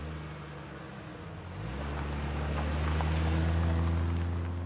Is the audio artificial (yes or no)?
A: no